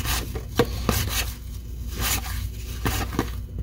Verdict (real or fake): real